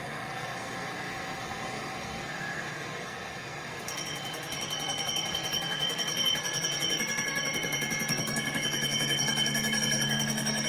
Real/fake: fake